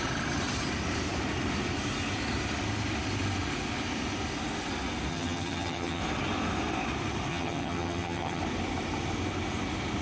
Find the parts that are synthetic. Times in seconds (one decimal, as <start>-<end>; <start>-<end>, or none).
5.1-6.0; 7.3-8.4

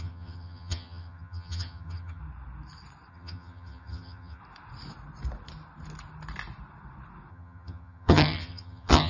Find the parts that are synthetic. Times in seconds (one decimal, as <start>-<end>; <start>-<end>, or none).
0.0-2.2; 3.1-4.4; 7.3-9.1

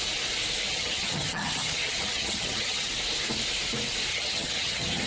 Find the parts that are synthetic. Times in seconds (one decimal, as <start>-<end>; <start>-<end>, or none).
0.7-2.9; 4.1-5.1

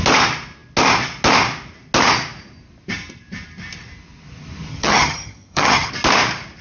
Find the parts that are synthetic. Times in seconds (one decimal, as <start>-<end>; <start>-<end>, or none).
4.7-5.9

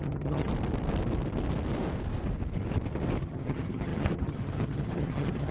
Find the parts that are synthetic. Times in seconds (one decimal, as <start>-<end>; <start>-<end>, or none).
0.0-0.5; 3.2-5.5

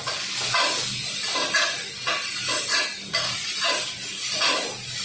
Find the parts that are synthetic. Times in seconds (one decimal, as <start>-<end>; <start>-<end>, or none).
none

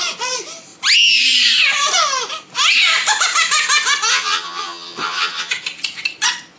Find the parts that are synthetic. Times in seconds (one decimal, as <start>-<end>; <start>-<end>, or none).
4.1-5.5

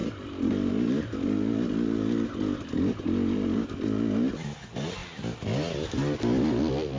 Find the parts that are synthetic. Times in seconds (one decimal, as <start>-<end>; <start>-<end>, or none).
none